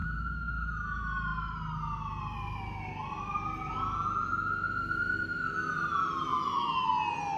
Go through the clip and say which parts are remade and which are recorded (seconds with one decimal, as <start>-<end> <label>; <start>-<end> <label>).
0.0-0.7 remade; 0.7-6.3 recorded; 6.3-6.9 remade; 6.9-7.4 recorded